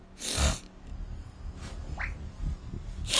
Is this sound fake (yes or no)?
no